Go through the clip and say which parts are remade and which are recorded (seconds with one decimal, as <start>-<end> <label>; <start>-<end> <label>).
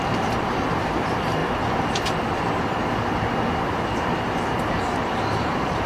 0.0-1.4 remade; 1.4-4.8 recorded; 4.8-5.9 remade